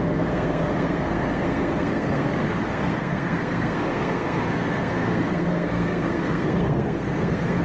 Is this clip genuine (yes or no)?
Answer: no